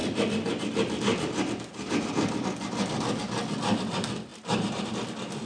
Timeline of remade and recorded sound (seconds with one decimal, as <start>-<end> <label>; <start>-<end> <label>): 0.0-4.3 recorded; 4.3-4.9 remade; 4.9-5.5 recorded